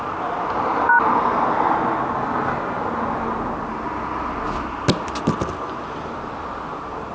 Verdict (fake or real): real